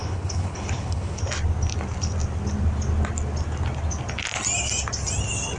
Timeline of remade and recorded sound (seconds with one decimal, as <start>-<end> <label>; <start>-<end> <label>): 0.0-1.2 remade; 1.2-5.6 recorded

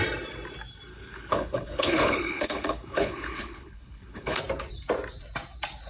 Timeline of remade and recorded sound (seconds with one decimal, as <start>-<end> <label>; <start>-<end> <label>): 0.0-0.9 recorded; 0.9-4.4 remade; 4.4-5.9 recorded

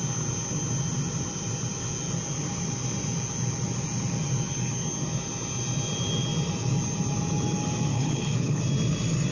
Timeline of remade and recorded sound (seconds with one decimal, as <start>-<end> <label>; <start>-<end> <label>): 0.0-7.9 recorded; 7.9-8.6 remade; 8.6-9.3 recorded

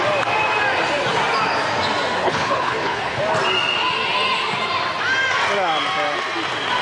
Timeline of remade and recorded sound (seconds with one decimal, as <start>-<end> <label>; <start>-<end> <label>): 0.0-2.2 recorded; 2.2-3.2 remade; 3.2-6.8 recorded

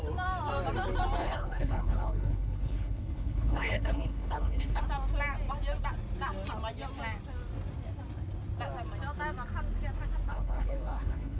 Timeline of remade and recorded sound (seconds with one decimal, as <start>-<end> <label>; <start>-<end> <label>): 0.0-1.2 recorded; 1.2-4.8 remade; 4.8-10.3 recorded; 10.3-11.4 remade